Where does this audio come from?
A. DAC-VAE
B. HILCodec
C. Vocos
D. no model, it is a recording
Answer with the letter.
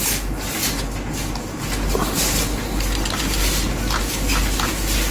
D